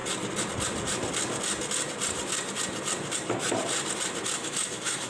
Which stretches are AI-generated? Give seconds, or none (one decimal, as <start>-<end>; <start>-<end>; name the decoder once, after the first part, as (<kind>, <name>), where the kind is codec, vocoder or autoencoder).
4.4-5.1 (autoencoder, DAC-VAE)